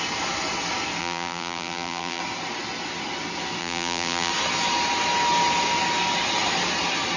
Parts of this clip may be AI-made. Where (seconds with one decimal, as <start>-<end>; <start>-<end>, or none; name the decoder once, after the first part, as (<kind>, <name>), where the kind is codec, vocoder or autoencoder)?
1.0-2.2 (vocoder, BigVGAN v2); 3.6-4.3